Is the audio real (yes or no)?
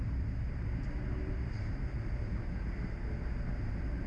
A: yes